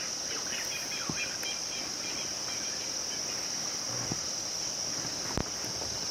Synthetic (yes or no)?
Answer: no